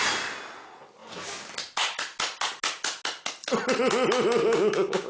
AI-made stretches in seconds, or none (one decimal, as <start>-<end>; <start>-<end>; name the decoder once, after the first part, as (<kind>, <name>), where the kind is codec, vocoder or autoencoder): 4.4-5.1 (codec, DAC)